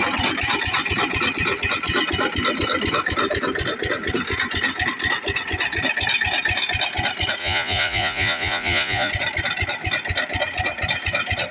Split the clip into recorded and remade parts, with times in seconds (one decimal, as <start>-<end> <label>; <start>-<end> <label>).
0.0-7.4 recorded; 7.4-9.1 remade; 9.1-11.5 recorded